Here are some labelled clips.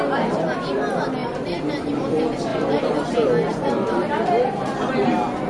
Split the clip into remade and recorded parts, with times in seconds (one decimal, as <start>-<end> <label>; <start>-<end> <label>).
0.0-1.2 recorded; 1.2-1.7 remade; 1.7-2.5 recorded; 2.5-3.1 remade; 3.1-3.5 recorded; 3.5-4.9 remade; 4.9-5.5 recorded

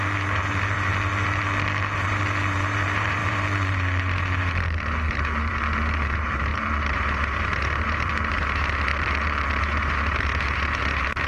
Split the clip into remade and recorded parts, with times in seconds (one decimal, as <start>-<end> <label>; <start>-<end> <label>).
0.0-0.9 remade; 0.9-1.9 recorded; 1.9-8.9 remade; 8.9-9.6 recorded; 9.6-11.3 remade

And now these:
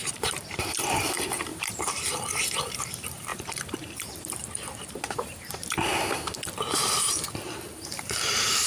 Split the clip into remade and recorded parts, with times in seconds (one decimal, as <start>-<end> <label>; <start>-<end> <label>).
0.0-5.9 remade; 5.9-7.7 recorded; 7.7-8.7 remade

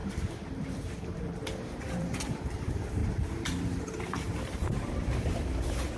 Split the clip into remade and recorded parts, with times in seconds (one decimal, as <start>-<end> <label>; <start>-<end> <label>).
0.0-3.0 remade; 3.0-3.8 recorded; 3.8-6.0 remade

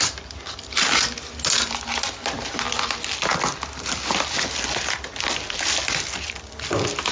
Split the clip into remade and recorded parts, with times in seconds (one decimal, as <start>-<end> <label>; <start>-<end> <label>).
0.0-7.1 recorded